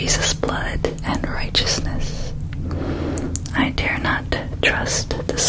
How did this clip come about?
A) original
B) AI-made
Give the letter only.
A